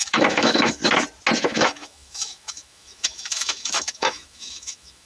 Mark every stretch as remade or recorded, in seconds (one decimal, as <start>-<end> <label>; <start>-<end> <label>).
0.0-0.8 remade; 0.8-1.4 recorded; 1.4-5.1 remade